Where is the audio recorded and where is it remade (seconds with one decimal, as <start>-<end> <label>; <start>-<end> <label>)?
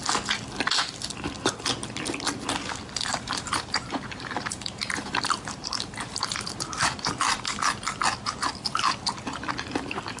0.0-3.1 recorded; 3.1-7.1 remade; 7.1-10.2 recorded